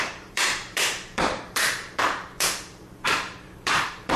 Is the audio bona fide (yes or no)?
no